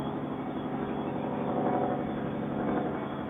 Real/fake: real